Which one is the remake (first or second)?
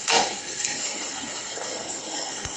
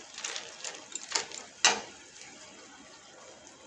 first